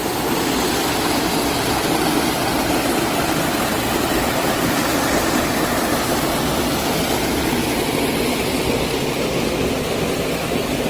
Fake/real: real